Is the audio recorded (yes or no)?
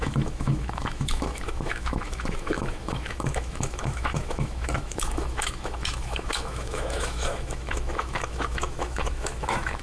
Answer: no